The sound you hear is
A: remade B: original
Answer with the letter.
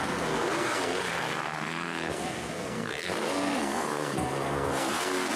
A